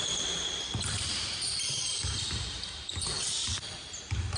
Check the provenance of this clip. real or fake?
fake